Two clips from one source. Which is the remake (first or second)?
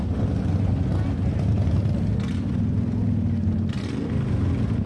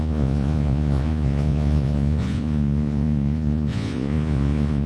second